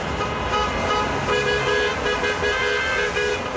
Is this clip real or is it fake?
real